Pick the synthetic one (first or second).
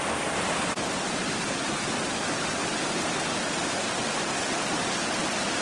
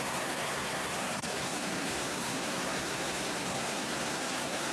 second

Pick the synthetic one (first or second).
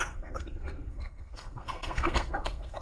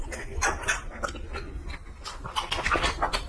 first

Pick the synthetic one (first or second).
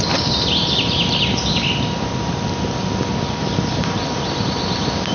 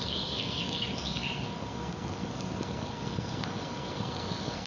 second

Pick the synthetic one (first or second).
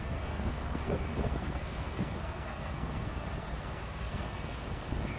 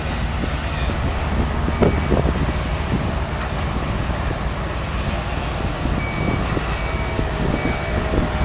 first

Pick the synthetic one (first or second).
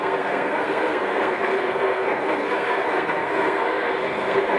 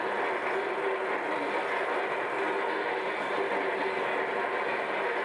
first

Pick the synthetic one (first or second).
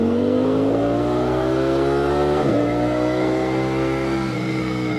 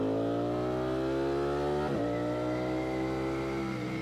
first